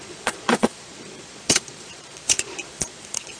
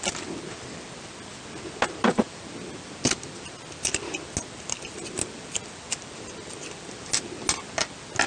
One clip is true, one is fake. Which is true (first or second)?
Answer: second